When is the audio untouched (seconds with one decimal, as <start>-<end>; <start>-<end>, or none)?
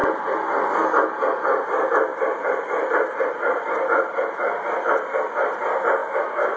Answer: 0.0-2.1; 4.7-6.6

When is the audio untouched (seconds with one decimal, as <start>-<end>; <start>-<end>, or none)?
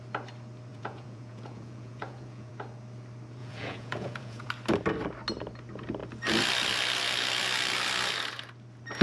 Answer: 0.0-0.7; 2.5-3.4; 4.5-9.0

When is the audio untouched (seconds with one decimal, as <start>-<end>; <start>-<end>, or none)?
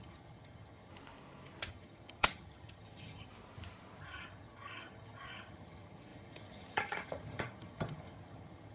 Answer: 0.9-1.7; 3.3-4.0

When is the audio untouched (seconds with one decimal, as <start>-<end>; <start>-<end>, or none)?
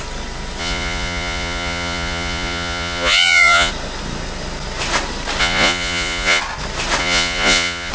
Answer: 0.0-0.6; 3.7-5.4; 6.4-7.0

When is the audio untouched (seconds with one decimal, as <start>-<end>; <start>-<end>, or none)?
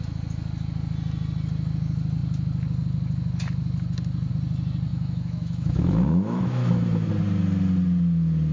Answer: 0.0-4.9; 7.1-8.5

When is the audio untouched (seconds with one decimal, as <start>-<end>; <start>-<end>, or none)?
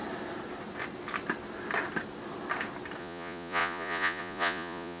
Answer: 0.0-3.0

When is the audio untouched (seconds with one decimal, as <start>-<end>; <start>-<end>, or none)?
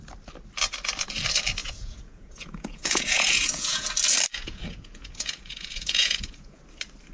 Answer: 0.0-1.6; 3.9-4.3; 6.6-7.1